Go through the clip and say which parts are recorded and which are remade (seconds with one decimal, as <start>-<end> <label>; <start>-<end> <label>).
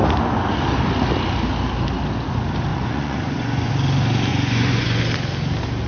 0.0-2.7 recorded; 2.7-3.7 remade; 3.7-4.3 recorded; 4.3-5.0 remade; 5.0-5.9 recorded